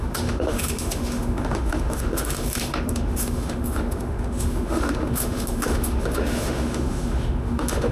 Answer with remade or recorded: remade